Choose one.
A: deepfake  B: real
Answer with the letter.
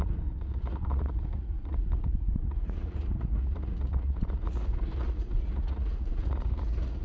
A